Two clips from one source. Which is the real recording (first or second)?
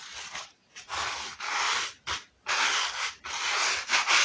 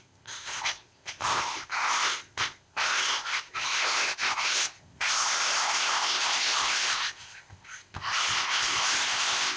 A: first